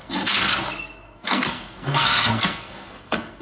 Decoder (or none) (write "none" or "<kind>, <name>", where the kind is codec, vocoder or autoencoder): codec, SNAC